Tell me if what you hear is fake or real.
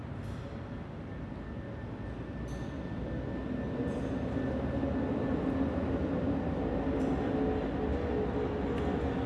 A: real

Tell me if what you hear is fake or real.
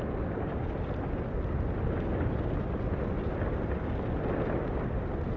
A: real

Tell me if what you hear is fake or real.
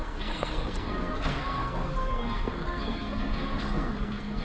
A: fake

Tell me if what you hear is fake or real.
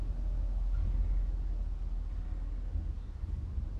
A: real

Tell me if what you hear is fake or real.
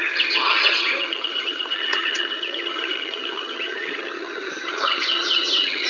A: fake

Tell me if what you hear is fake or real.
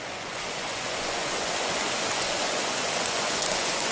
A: fake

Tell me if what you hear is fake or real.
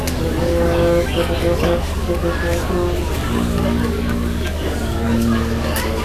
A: fake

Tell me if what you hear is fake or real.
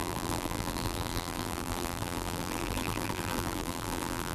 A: fake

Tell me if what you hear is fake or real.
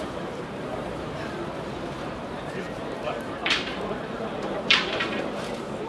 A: fake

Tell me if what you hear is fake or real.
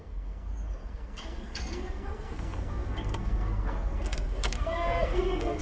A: fake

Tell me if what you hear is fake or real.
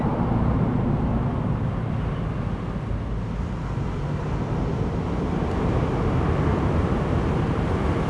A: real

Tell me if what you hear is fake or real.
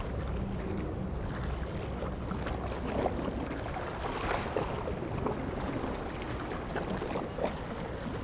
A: real